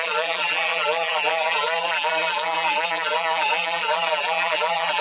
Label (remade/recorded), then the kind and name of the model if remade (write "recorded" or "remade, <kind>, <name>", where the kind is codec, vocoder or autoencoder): remade, vocoder, BigVGAN v2